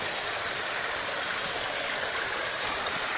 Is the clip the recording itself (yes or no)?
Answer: yes